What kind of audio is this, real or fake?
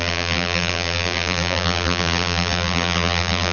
fake